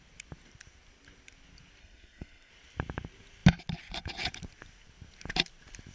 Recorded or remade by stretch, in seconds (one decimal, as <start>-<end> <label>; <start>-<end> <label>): 0.0-1.8 recorded; 1.8-2.5 remade; 2.5-5.9 recorded